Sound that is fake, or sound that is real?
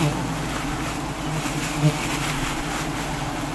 real